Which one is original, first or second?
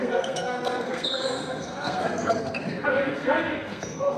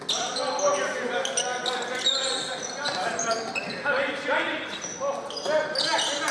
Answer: second